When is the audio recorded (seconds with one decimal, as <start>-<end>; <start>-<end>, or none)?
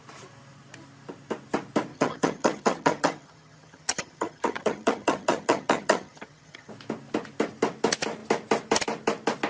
0.0-1.9; 6.7-9.5